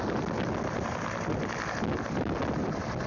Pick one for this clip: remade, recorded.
recorded